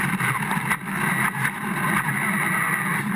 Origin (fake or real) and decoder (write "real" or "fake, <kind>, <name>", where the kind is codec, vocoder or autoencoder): real